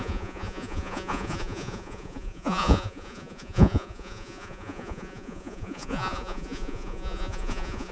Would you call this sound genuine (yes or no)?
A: no